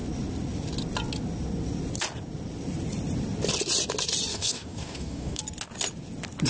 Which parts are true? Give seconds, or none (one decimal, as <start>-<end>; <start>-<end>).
0.0-4.3; 5.4-6.5